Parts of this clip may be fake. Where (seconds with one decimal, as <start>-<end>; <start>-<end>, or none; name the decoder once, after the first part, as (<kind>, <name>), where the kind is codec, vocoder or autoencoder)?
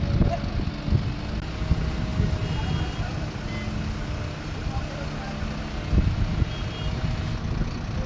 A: none